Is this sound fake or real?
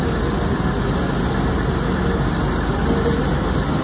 real